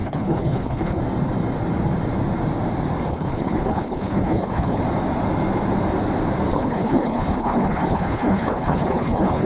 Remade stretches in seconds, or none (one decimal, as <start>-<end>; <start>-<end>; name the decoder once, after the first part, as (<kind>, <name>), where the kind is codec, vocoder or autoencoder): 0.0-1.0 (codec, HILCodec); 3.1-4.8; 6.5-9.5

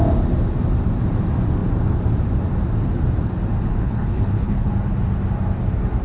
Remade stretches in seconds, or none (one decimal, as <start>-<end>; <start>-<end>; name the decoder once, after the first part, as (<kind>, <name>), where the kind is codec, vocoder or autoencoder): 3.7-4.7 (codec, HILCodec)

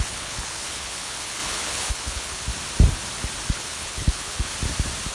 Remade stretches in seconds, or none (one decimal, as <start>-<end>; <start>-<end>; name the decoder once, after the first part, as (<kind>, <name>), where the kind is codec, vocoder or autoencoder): 0.0-2.5 (codec, HILCodec); 3.5-4.5

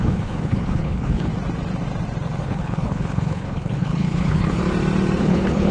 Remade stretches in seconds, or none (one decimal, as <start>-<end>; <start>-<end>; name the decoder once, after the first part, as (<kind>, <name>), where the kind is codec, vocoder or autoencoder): 0.0-1.3 (codec, HILCodec); 2.4-4.6; 5.2-5.7

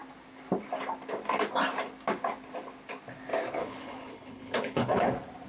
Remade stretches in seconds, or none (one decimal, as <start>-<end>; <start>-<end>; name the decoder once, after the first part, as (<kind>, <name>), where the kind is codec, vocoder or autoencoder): 3.6-5.1 (codec, HILCodec)